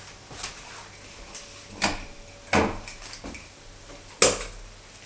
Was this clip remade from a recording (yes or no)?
no